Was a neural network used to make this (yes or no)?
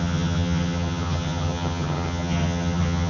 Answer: yes